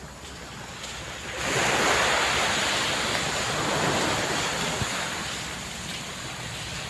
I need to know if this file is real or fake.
real